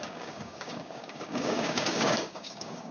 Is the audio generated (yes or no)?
yes